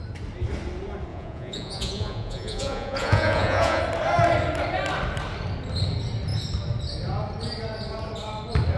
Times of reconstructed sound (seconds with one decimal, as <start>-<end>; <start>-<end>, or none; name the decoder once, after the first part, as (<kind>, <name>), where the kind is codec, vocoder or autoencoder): 1.1-3.8 (vocoder, Vocos)